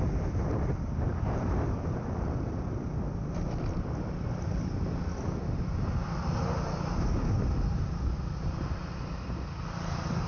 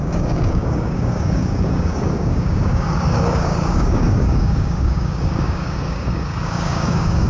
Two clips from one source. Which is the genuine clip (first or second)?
first